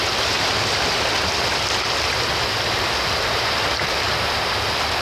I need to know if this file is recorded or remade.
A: recorded